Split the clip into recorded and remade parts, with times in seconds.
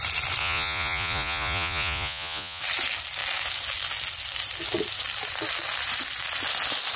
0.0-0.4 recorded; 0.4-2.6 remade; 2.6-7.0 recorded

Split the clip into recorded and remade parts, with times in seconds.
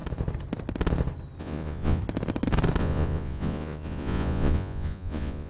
0.0-1.4 recorded; 1.4-2.0 remade; 2.0-2.8 recorded; 2.8-5.5 remade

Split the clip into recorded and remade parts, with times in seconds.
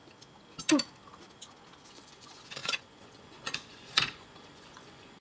0.0-1.9 recorded; 1.9-5.2 remade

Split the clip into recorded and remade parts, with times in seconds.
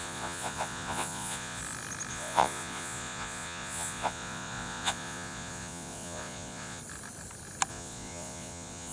0.0-1.6 remade; 1.6-2.1 recorded; 2.1-6.8 remade; 6.8-7.7 recorded; 7.7-8.9 remade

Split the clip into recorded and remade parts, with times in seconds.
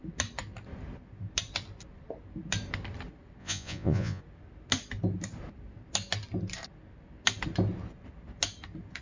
0.0-3.4 recorded; 3.4-4.2 remade; 4.2-9.0 recorded